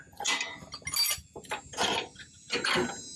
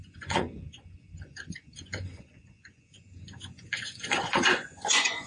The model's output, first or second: second